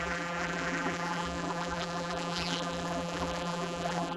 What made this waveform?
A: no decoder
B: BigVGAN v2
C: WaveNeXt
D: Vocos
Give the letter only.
B